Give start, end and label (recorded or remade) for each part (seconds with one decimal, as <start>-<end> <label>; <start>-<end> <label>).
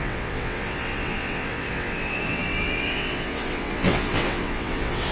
0.0-5.1 remade